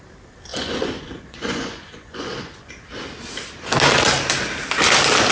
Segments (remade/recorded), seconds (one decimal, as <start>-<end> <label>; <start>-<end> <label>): 0.0-0.5 recorded; 0.5-2.7 remade; 2.7-5.3 recorded